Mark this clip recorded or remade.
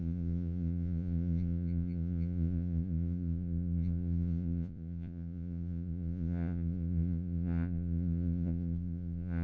remade